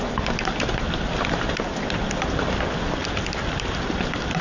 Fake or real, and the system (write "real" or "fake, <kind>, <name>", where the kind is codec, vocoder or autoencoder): real